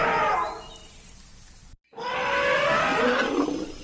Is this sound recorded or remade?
recorded